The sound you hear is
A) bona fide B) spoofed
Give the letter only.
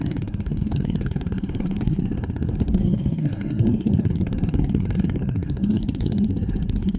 B